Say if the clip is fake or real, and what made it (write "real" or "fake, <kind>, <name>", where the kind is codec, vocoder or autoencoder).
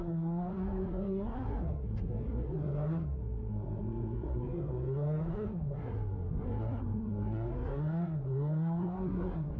fake, codec, SNAC